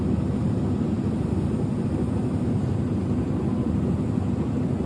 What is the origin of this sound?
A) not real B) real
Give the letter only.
B